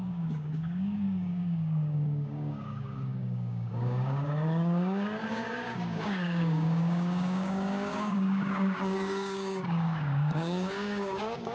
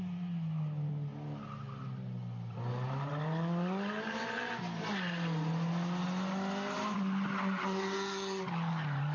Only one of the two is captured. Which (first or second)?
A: second